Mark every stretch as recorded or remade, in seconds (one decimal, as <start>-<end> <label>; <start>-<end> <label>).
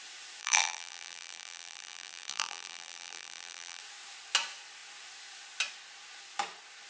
0.0-0.4 recorded; 0.4-3.8 remade; 3.8-6.9 recorded